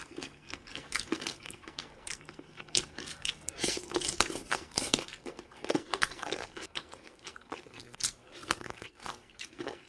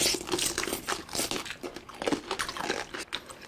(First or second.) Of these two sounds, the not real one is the first